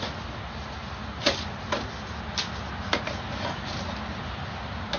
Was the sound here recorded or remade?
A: recorded